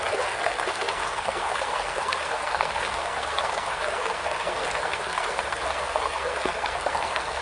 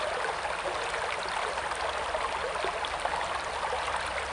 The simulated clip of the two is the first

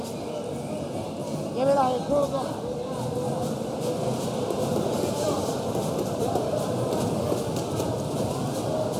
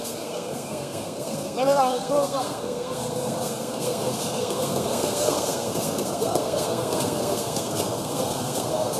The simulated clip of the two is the second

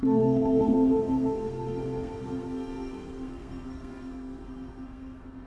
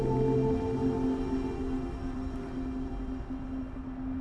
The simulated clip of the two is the first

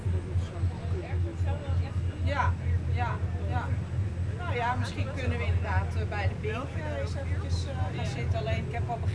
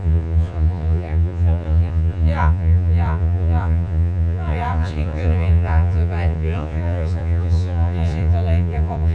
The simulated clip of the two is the second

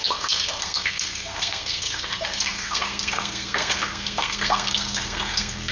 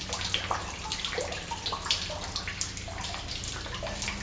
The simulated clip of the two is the first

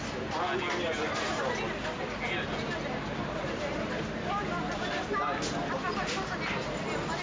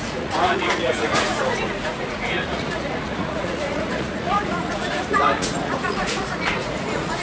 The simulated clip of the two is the second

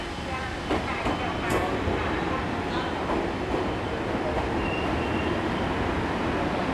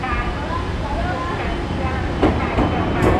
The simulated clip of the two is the second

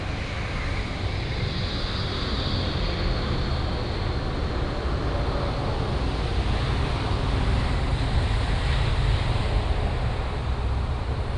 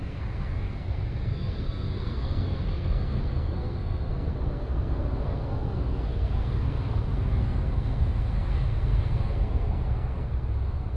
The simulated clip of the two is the second